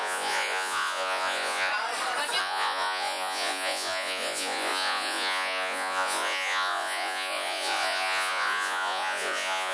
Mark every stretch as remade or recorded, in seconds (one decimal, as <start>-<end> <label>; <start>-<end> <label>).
0.0-1.7 remade; 1.7-2.4 recorded; 2.4-9.7 remade